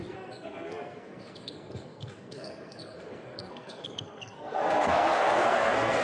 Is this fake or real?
fake